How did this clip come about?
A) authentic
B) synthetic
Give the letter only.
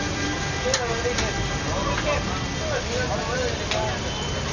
A